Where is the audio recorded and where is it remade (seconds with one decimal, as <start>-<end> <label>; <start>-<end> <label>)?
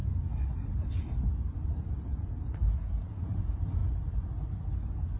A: 0.0-5.2 recorded